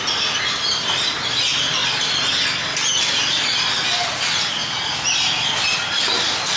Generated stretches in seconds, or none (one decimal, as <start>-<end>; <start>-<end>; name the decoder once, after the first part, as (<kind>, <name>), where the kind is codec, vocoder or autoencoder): none